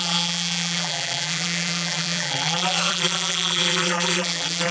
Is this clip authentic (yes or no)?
no